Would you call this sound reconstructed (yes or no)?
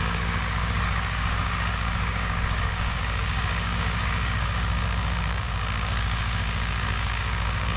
yes